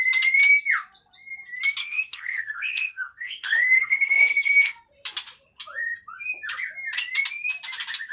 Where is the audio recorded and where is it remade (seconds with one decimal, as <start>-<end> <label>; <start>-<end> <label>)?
0.0-1.8 recorded; 1.8-4.8 remade; 4.8-8.1 recorded